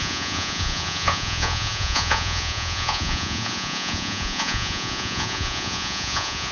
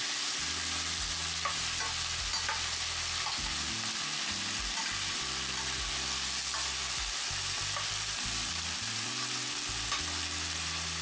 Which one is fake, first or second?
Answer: first